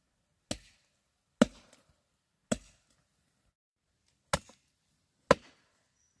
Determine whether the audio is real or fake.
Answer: real